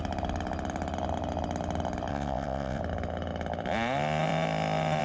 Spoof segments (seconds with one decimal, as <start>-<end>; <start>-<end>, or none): 2.1-2.8